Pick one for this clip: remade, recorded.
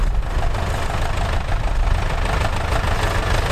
recorded